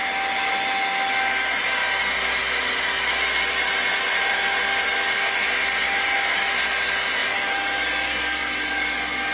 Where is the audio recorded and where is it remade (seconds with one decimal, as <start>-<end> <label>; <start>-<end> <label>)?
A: 0.0-9.3 recorded